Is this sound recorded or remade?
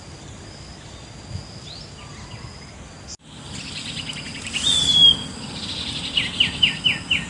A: recorded